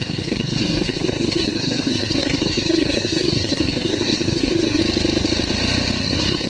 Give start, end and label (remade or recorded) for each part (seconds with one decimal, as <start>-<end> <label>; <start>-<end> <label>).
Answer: 0.0-4.8 remade; 4.8-6.0 recorded; 6.0-6.5 remade